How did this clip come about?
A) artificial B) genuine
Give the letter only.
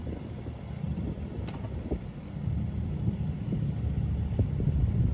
B